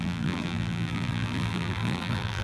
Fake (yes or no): yes